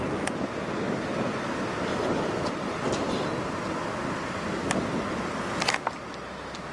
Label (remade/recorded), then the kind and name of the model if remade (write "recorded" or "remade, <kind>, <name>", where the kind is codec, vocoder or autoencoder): recorded